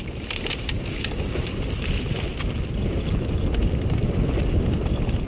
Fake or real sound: real